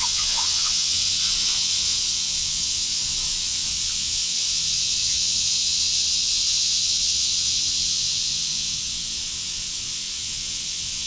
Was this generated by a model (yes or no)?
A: yes